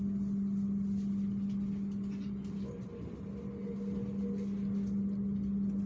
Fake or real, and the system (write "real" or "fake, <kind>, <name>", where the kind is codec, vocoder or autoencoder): real